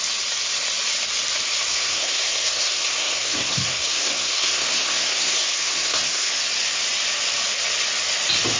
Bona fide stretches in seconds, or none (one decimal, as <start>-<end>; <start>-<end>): 0.0-1.7; 6.3-8.6